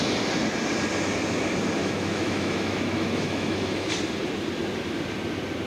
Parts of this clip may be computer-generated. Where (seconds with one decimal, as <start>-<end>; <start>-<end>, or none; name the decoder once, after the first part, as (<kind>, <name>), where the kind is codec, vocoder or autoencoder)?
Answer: 1.8-3.9 (autoencoder, DAC-VAE)